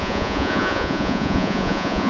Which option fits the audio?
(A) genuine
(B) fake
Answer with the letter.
B